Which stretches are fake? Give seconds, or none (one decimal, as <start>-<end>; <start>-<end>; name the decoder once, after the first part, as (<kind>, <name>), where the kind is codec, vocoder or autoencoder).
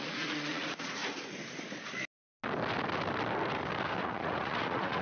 0.0-1.0 (vocoder, Vocos); 4.0-5.0